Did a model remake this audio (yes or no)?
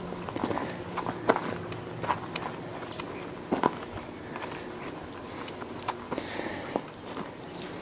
no